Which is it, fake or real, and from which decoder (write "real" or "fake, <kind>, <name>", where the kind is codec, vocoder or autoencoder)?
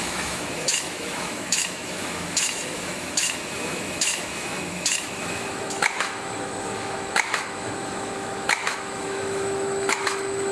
fake, autoencoder, DAC-VAE